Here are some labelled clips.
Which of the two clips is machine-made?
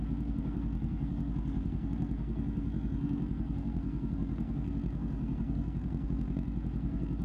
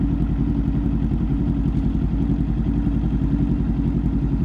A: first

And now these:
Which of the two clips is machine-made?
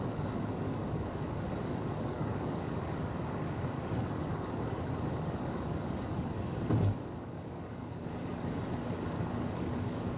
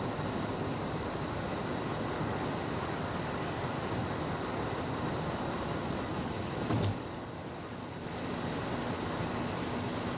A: first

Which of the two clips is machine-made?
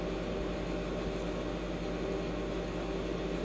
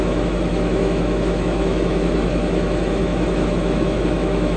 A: second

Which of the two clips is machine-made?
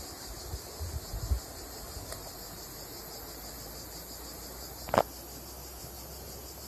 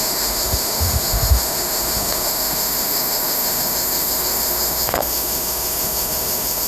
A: second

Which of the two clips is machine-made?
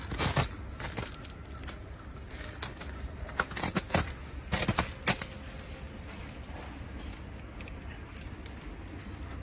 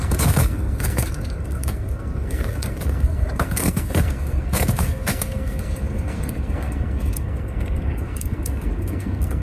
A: second